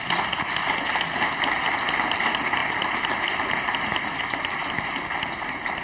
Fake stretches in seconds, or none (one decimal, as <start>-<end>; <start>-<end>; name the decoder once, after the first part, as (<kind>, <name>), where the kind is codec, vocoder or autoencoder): 2.6-3.9 (vocoder, BigVGAN v2)